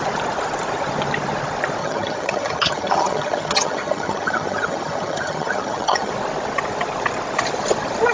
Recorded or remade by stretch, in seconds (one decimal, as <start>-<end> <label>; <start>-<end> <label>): 0.0-1.8 recorded; 1.8-6.1 remade; 6.1-8.1 recorded